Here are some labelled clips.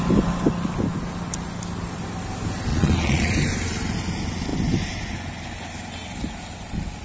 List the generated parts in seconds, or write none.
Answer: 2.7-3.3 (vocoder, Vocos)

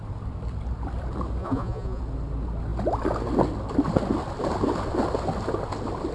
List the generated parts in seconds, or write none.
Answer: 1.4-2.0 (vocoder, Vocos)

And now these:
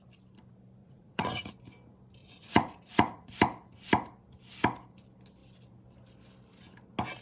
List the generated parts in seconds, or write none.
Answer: 0.8-1.5 (vocoder, Vocos); 2.2-3.3